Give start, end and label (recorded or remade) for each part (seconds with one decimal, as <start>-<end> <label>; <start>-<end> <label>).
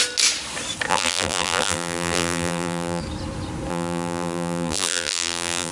0.0-0.9 recorded; 0.9-3.0 remade; 3.0-3.7 recorded; 3.7-5.7 remade